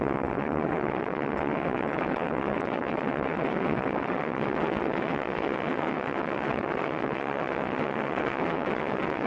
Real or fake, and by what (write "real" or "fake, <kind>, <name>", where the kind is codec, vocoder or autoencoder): fake, vocoder, WaveNeXt